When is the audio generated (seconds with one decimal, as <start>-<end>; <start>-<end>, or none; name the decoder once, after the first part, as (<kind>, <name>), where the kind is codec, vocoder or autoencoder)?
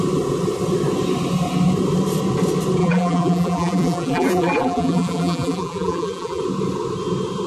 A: 2.8-6.4 (vocoder, BigVGAN v2)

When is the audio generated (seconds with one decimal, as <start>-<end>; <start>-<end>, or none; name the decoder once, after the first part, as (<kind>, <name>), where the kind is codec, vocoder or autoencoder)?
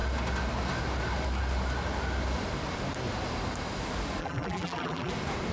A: 4.2-5.1 (vocoder, BigVGAN v2)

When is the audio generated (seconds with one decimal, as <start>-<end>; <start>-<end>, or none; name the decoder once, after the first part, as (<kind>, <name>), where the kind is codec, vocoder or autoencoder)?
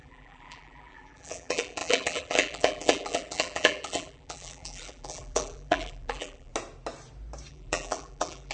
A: 0.0-6.5 (vocoder, BigVGAN v2); 7.5-8.5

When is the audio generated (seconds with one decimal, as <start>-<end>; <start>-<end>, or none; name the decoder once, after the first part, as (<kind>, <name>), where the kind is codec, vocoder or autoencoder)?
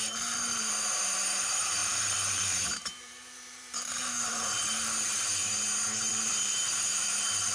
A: 0.0-5.4 (vocoder, BigVGAN v2); 6.0-7.5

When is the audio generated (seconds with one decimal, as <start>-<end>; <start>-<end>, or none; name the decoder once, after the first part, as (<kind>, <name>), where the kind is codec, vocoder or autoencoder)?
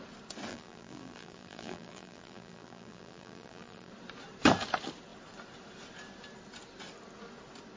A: 0.5-3.9 (vocoder, BigVGAN v2)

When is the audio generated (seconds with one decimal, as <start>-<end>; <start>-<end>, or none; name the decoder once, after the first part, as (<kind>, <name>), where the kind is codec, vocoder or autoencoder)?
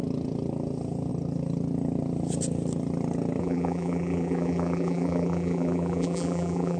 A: 3.4-6.8 (vocoder, BigVGAN v2)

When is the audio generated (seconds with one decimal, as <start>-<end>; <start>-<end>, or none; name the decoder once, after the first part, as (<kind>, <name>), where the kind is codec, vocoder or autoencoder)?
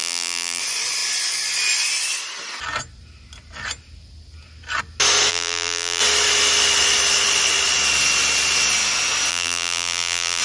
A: 0.0-0.6 (vocoder, BigVGAN v2); 5.3-6.0; 9.3-10.4